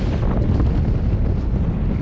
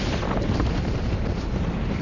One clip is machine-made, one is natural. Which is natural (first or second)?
first